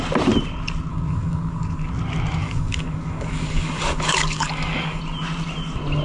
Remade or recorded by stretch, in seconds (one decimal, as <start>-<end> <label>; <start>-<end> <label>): 0.0-0.9 recorded; 0.9-1.9 remade; 1.9-2.4 recorded; 2.4-5.0 remade; 5.0-6.0 recorded